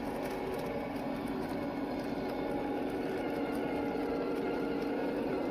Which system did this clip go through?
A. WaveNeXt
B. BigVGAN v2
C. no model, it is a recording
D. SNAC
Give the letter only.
C